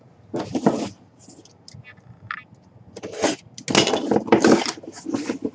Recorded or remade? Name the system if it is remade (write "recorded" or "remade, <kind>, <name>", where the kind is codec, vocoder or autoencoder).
recorded